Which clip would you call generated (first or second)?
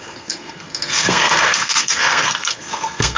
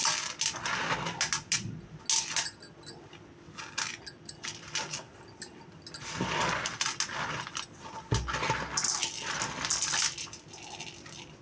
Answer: first